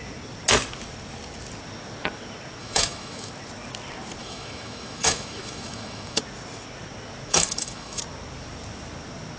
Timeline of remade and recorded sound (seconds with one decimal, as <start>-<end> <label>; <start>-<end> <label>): 0.0-2.6 recorded; 2.6-3.3 remade; 3.3-4.2 recorded; 4.2-6.2 remade; 6.2-7.3 recorded; 7.3-8.0 remade; 8.0-9.4 recorded